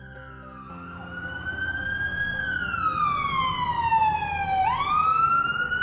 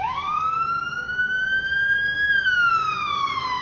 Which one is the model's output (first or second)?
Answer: second